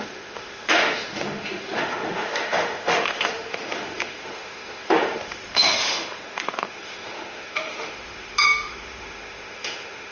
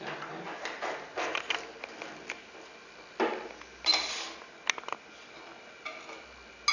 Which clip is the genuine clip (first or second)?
second